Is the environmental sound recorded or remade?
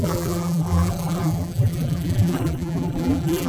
remade